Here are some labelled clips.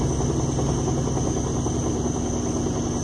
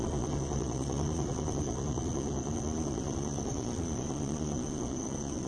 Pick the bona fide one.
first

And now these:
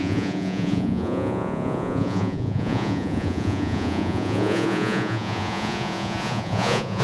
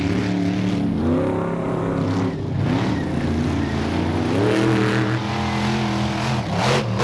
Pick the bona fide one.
second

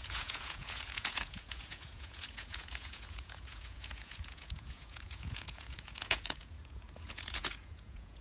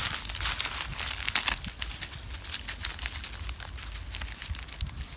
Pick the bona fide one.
second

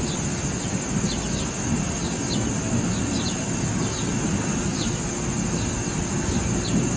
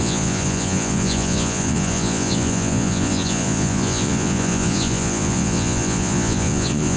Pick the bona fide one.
first